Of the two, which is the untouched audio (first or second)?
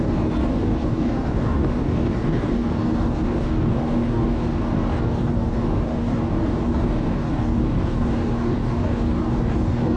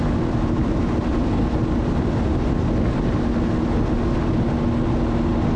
second